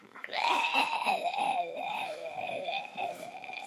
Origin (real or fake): fake